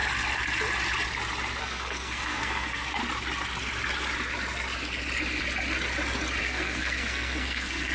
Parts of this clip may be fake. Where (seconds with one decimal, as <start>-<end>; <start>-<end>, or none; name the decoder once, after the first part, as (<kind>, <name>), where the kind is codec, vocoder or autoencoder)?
1.6-3.0 (codec, SNAC); 6.4-7.9